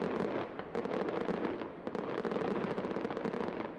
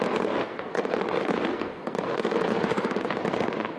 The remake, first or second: second